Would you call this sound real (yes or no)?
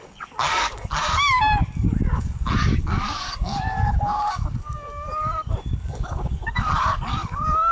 no